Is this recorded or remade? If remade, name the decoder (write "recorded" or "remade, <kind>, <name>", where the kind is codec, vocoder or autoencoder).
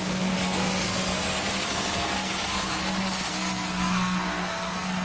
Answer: remade, codec, SNAC